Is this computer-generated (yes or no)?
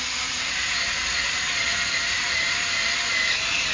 no